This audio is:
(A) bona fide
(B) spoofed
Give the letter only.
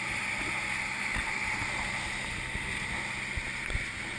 A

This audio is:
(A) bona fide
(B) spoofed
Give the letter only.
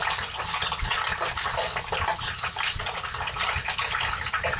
A